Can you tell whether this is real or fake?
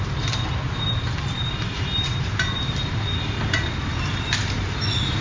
real